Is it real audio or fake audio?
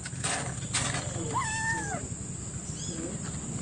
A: real